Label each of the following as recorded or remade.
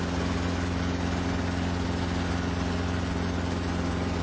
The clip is recorded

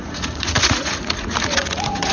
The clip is remade